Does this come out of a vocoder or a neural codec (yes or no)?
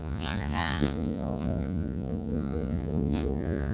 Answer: yes